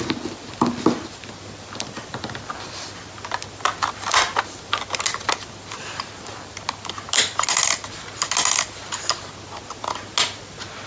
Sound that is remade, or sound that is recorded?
recorded